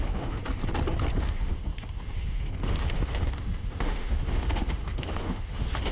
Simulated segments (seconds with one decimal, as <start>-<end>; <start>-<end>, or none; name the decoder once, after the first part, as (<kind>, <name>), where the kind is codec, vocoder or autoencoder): 0.0-0.4 (autoencoder, DAC-VAE); 1.2-5.9